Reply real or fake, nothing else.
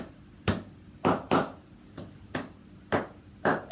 real